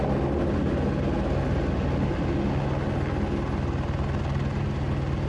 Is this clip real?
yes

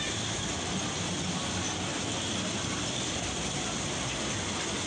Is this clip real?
yes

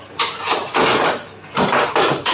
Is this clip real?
yes